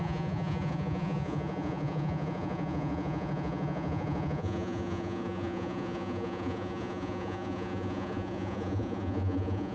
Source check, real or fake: fake